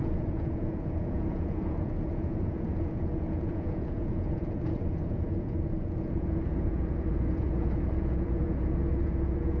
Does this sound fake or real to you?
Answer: fake